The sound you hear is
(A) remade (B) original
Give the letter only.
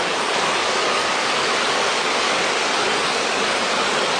A